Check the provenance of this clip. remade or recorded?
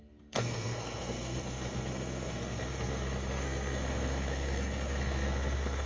remade